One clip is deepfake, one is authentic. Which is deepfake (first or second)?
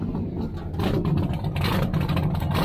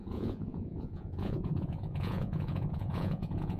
second